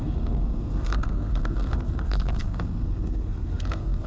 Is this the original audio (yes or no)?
no